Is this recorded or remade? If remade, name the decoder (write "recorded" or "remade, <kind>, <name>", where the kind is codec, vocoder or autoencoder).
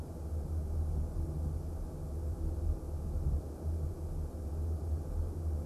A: recorded